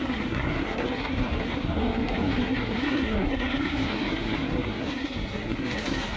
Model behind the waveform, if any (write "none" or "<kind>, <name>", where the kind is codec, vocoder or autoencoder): codec, SNAC